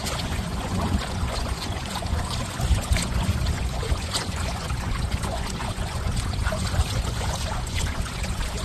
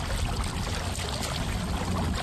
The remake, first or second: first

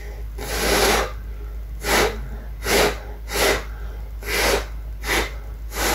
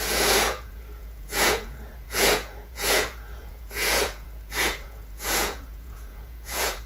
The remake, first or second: second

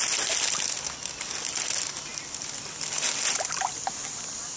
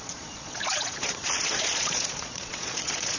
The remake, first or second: second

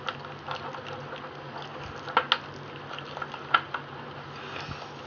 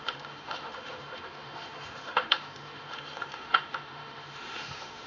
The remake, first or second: second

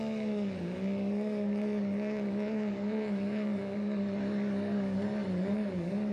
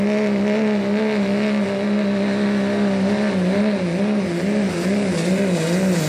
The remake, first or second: first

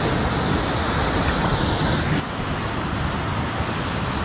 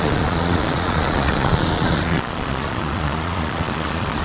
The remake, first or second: second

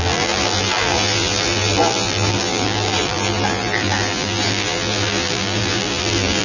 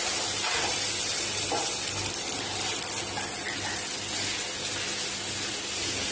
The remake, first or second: first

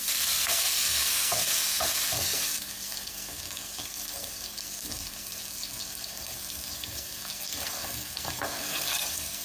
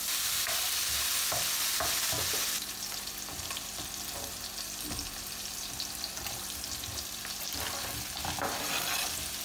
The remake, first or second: first